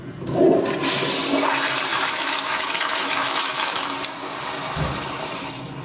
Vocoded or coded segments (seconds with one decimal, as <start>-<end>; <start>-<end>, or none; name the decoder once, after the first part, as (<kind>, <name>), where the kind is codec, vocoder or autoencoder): 1.9-3.9 (autoencoder, DAC-VAE)